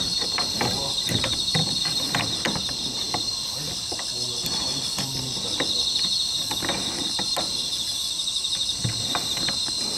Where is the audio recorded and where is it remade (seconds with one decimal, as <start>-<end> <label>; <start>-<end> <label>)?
0.0-1.6 remade; 1.6-6.7 recorded; 6.7-8.0 remade; 8.0-9.4 recorded; 9.4-10.0 remade